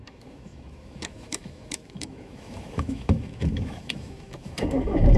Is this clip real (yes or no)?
no